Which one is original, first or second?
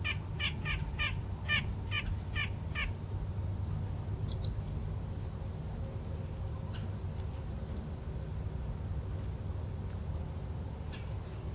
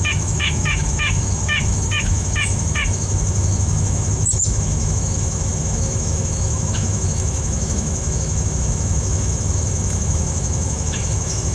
first